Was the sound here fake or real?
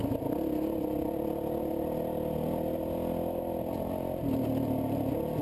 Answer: real